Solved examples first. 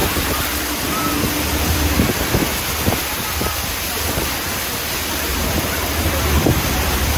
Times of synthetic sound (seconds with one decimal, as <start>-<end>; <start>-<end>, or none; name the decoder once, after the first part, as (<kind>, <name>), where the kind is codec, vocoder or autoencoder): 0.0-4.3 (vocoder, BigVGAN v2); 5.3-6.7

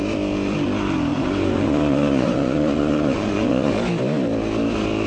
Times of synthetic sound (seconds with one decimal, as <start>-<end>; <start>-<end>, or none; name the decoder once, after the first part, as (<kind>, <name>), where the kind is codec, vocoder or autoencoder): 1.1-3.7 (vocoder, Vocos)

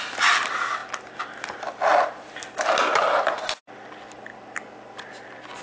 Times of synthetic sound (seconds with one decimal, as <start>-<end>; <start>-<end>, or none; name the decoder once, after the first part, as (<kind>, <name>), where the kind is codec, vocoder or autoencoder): none

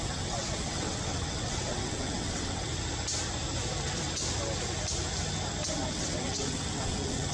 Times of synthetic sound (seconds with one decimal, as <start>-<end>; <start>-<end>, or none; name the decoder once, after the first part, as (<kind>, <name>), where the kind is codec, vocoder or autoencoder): 0.0-2.7 (vocoder, WaveNeXt); 5.9-7.3

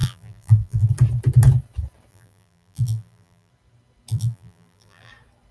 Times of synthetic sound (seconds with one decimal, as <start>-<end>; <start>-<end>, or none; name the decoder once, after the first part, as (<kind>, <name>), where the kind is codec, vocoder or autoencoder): 0.0-0.9 (vocoder, BigVGAN v2); 2.1-3.5; 4.1-5.1

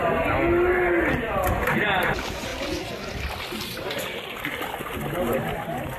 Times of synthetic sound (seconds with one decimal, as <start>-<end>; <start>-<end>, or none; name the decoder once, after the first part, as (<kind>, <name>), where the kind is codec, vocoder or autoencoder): none

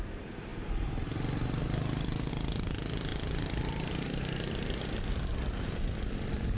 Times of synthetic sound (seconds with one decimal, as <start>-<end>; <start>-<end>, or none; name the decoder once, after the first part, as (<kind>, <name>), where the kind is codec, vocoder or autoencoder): 0.5-2.3 (vocoder, BigVGAN v2); 3.1-5.1

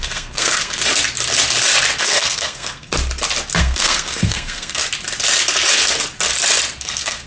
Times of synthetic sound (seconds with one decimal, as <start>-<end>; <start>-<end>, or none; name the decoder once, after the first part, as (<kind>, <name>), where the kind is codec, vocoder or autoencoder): 0.0-0.8 (codec, SNAC); 2.0-2.9; 3.6-4.8; 6.8-7.3